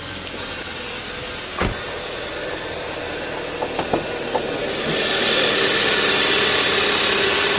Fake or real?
real